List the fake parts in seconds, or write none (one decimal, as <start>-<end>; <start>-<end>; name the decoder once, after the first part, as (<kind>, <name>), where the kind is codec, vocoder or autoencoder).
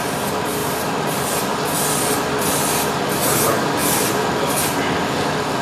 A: 0.6-1.2 (vocoder, BigVGAN v2)